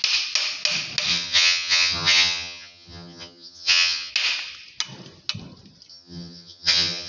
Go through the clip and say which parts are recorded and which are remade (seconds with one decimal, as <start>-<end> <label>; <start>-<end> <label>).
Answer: 0.0-1.1 recorded; 1.1-4.1 remade; 4.1-5.9 recorded; 5.9-7.1 remade

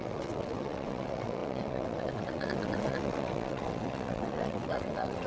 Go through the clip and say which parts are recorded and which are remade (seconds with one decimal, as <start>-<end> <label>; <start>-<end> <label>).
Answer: 0.0-5.3 remade

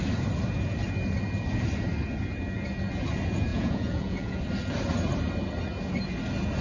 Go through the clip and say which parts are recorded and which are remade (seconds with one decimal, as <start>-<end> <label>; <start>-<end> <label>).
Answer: 0.0-3.5 recorded; 3.5-4.4 remade; 4.4-6.6 recorded

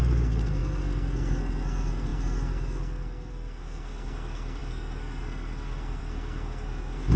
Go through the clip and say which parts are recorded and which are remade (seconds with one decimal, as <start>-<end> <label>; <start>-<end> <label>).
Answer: 0.0-7.2 remade